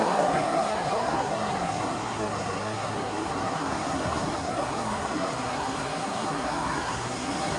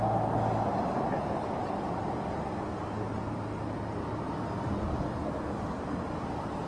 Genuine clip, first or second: second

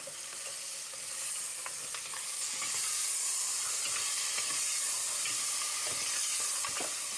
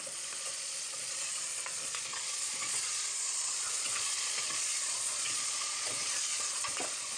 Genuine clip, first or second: first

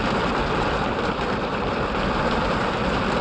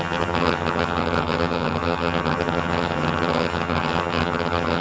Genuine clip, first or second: first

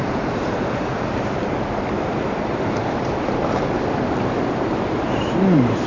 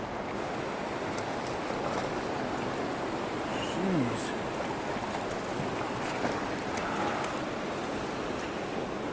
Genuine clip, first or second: second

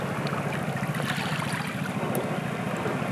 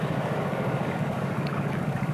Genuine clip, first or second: first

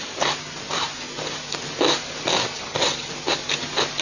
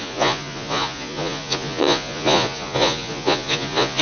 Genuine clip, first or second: first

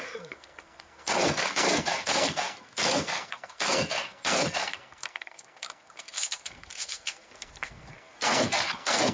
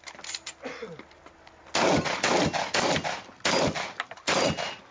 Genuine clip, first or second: second